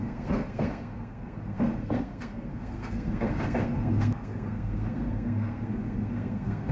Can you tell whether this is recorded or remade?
remade